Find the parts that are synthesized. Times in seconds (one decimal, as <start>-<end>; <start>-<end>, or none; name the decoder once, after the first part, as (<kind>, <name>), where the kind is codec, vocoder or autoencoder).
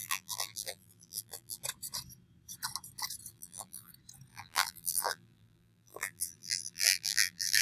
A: 0.0-1.6 (vocoder, BigVGAN v2); 3.3-3.9; 4.3-7.6